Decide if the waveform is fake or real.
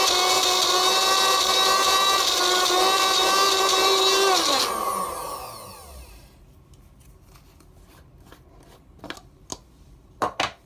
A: real